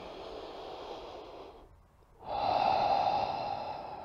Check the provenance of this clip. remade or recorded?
recorded